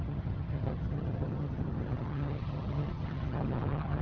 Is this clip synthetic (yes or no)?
yes